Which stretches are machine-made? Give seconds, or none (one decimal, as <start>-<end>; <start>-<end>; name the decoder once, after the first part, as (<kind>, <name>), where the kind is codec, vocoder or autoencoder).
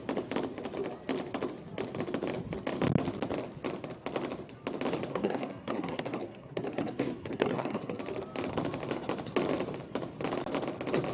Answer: 5.1-8.0 (codec, SNAC)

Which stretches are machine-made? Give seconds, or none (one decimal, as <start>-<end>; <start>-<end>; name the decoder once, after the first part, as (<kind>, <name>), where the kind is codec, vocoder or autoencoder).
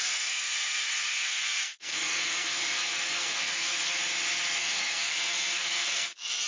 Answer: 0.0-4.0 (codec, SNAC); 4.6-6.5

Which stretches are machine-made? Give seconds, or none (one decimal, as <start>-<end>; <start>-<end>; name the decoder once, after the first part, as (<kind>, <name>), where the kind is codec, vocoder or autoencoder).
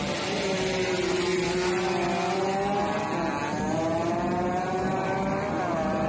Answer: none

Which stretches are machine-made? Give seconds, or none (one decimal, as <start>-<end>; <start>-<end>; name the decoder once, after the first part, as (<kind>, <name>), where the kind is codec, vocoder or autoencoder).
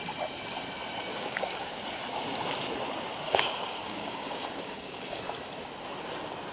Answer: 1.1-1.8 (codec, DAC); 3.1-5.2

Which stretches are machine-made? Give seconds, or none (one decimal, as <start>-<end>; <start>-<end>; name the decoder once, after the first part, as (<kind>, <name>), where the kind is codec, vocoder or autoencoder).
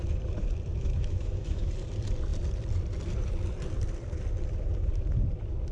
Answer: 0.7-1.7 (autoencoder, DAC-VAE)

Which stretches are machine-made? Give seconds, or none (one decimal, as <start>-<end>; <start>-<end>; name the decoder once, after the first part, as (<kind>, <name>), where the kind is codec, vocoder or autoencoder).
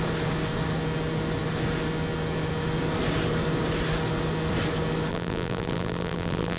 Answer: 5.1-6.6 (vocoder, BigVGAN v2)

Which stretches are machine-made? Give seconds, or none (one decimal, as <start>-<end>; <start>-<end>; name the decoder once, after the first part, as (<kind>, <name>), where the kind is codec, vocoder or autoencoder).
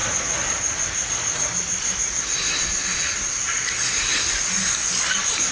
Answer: none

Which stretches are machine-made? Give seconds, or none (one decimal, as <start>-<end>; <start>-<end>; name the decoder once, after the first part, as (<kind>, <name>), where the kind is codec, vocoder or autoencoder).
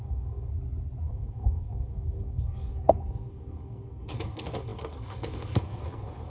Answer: 0.0-0.5 (codec, SNAC); 1.0-6.3